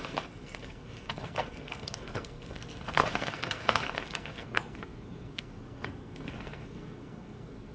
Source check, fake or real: fake